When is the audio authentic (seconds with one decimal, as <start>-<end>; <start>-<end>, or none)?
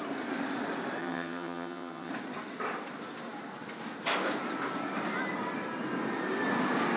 0.0-1.0; 2.1-7.0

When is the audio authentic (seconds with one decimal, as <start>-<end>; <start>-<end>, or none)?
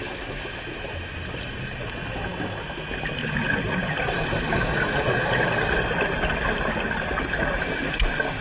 0.0-8.4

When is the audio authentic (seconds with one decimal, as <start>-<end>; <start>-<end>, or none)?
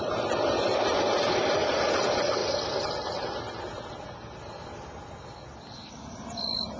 0.0-6.8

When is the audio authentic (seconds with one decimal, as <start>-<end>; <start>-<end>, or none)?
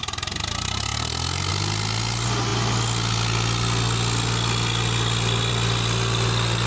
0.0-6.7